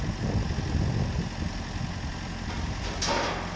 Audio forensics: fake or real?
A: real